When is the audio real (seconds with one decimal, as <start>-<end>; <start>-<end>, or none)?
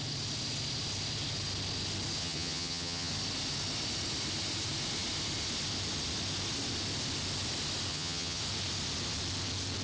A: 0.0-2.2; 3.1-7.9; 8.4-9.8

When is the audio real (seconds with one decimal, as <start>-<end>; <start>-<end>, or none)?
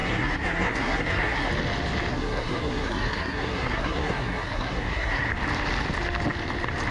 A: 1.5-2.1; 5.3-6.9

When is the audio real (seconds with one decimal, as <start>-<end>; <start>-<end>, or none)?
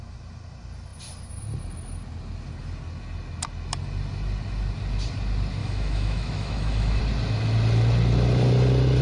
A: 0.0-5.6; 7.0-9.0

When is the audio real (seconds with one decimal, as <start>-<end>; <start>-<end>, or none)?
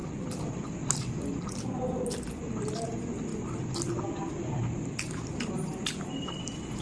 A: 0.0-6.8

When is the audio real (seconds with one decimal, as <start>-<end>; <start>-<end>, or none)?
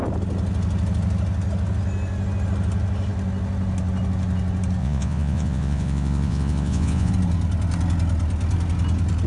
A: 0.0-4.8; 7.1-9.3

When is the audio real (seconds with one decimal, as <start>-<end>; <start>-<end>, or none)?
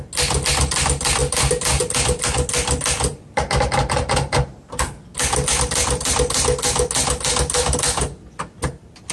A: 0.0-9.1